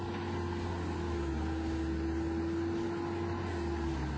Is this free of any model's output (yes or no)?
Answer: yes